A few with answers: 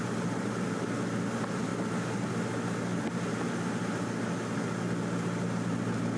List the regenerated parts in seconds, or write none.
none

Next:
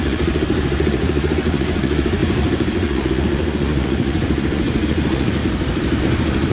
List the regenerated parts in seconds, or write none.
0.0-5.4 (vocoder, Vocos); 6.0-6.5

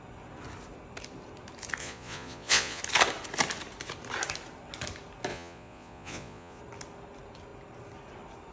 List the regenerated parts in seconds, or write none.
1.8-2.8 (vocoder, Vocos); 5.3-6.6

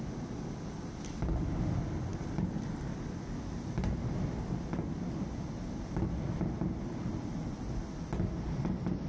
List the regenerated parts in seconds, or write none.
none

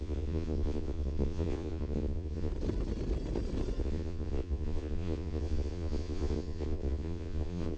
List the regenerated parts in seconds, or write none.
0.0-2.5 (vocoder, Vocos); 3.8-7.8

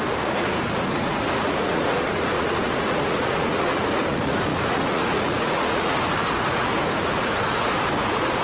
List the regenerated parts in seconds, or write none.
0.0-8.4 (vocoder, Vocos)

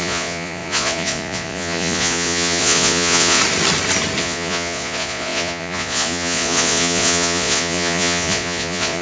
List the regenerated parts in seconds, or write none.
0.0-3.4 (vocoder, Vocos); 4.2-9.0